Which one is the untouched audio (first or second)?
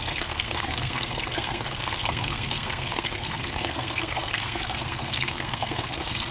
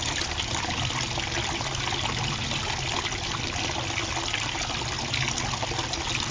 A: second